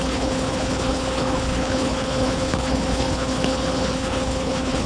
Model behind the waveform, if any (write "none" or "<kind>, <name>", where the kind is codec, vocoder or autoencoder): codec, HILCodec